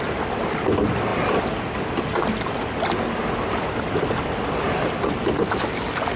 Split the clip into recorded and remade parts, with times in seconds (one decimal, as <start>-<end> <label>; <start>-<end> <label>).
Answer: 0.0-6.2 recorded